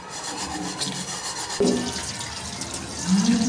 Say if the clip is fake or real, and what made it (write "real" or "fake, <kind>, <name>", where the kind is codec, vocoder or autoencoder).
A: real